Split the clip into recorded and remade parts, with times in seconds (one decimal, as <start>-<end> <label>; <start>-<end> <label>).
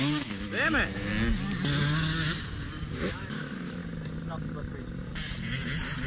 0.0-1.1 remade; 1.1-2.9 recorded; 2.9-3.8 remade; 3.8-6.1 recorded